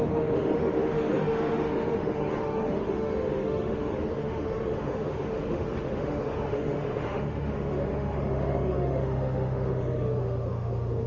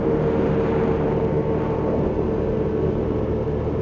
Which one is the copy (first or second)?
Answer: first